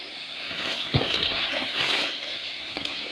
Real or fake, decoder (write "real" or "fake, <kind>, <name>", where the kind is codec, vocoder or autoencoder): fake, codec, SNAC